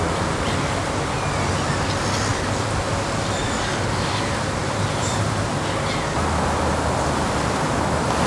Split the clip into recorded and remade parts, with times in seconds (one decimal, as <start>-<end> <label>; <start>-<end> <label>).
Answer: 0.0-2.3 recorded; 2.3-3.7 remade; 3.7-4.6 recorded; 4.6-5.5 remade; 5.5-8.3 recorded